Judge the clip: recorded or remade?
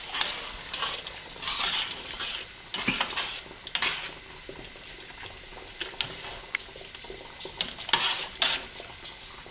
recorded